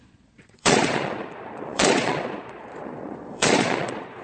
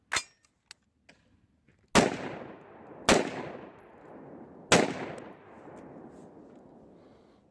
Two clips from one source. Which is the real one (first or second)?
second